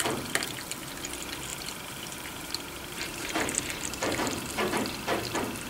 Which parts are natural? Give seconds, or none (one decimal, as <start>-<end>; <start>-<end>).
0.0-1.5; 4.9-5.7